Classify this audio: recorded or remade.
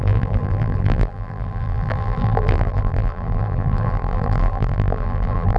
remade